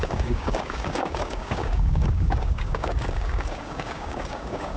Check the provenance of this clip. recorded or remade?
remade